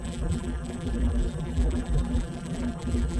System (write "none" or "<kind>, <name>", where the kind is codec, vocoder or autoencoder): vocoder, BigVGAN v2